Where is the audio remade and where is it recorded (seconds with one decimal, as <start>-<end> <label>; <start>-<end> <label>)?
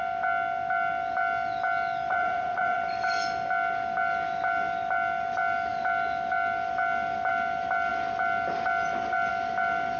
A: 0.0-2.1 recorded; 2.1-2.8 remade; 2.8-10.0 recorded